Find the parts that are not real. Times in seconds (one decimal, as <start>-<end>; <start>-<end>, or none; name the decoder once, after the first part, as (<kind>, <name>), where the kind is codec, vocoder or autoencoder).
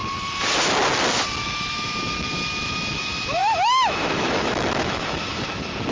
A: 1.4-5.9 (autoencoder, DAC-VAE)